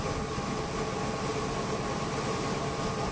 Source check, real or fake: real